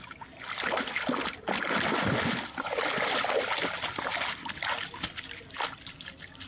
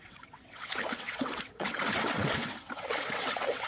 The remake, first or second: second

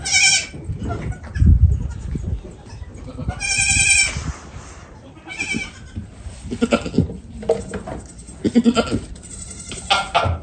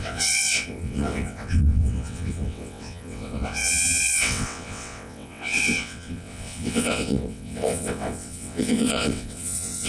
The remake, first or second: second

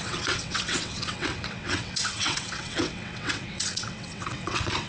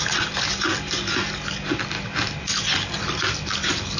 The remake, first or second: first